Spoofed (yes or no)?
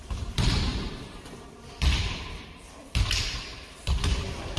yes